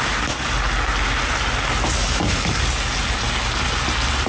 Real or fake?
real